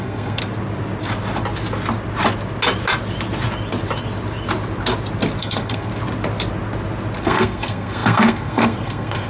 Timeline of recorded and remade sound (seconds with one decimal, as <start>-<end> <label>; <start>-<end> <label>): 0.0-0.4 remade; 0.4-5.4 recorded; 5.4-5.9 remade; 5.9-7.2 recorded; 7.2-9.3 remade